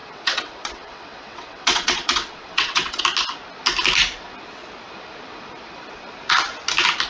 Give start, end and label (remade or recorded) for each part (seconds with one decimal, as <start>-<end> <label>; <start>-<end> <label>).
0.0-3.0 remade; 3.0-7.1 recorded